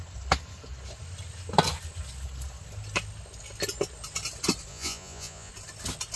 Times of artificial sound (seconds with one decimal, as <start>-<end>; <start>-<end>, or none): 4.7-5.5